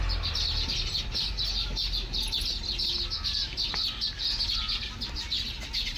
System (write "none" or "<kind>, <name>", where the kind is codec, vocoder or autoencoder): none